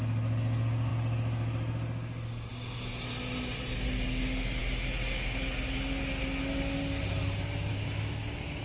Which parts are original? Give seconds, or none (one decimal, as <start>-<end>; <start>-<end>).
0.0-7.7